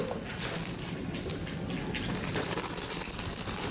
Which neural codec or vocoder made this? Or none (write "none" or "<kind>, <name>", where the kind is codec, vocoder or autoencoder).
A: none